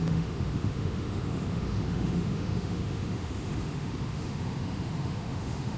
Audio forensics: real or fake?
fake